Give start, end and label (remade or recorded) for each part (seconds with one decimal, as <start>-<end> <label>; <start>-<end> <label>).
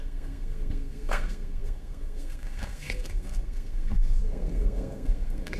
0.0-5.6 remade